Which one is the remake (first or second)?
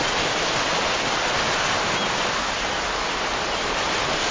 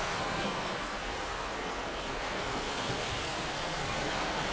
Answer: second